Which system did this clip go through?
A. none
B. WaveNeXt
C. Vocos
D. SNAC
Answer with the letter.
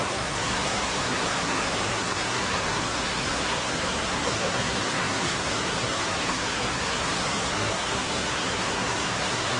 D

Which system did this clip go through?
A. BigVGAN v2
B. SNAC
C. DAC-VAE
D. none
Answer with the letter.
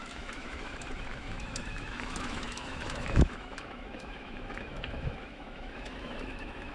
C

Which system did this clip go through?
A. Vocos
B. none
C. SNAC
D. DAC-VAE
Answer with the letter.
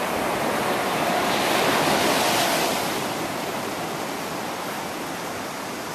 B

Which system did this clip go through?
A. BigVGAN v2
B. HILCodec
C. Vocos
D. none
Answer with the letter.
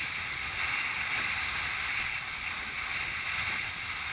D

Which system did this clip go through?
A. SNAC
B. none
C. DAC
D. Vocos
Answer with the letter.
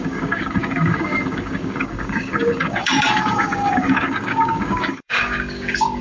C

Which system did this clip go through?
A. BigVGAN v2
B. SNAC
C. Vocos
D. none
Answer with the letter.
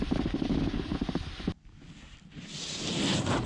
D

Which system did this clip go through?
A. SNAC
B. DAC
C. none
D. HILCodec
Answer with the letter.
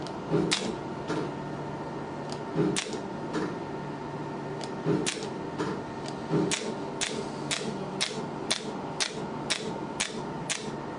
C